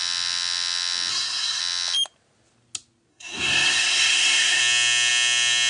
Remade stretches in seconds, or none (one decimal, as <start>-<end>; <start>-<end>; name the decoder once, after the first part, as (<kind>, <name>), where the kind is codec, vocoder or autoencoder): 1.1-1.6 (codec, SNAC); 3.1-4.6